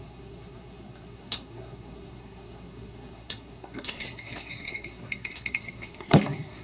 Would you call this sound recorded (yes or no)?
no